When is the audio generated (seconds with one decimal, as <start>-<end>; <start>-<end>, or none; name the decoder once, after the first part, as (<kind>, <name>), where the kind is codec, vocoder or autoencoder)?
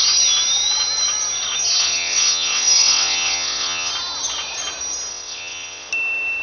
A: 1.8-3.9 (vocoder, WaveNeXt); 5.1-5.9